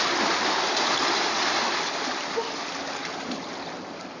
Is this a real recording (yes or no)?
yes